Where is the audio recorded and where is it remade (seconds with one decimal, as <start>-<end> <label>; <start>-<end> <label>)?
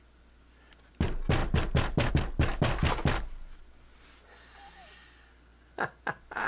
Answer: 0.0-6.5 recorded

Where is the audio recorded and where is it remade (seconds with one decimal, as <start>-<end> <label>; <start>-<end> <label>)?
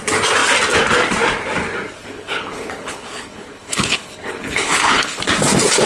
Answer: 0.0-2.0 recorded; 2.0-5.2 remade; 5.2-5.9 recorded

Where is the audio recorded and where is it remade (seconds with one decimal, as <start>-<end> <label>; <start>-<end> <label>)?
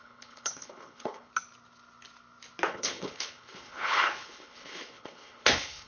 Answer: 0.0-1.3 remade; 1.3-2.7 recorded; 2.7-5.9 remade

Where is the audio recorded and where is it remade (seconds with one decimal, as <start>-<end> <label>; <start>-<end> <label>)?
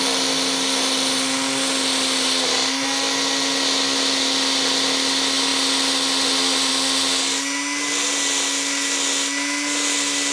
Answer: 0.0-10.3 recorded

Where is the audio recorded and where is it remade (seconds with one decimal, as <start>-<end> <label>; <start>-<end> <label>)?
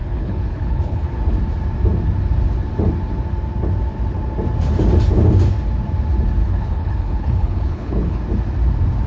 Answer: 0.0-1.2 remade; 1.2-6.4 recorded; 6.4-8.2 remade; 8.2-9.1 recorded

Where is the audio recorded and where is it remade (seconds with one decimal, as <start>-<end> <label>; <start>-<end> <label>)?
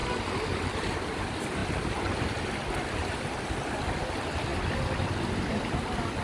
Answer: 0.0-6.2 recorded